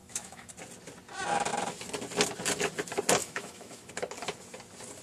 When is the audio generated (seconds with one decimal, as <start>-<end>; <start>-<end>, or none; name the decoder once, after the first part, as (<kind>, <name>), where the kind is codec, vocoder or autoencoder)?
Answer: 0.0-0.5 (autoencoder, DAC-VAE); 3.2-3.9